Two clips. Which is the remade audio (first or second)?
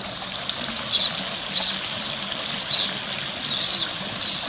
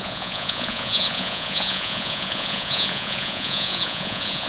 second